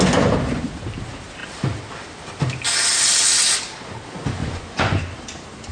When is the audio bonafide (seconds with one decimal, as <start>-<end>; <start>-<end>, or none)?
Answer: 0.0-4.4; 5.0-5.7